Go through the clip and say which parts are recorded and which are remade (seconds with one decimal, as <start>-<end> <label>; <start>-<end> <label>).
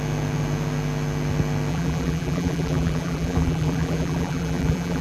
0.0-1.7 recorded; 1.7-5.0 remade